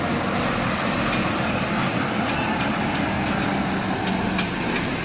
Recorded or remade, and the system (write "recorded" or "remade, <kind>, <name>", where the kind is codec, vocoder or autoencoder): recorded